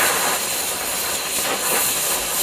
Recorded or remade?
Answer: recorded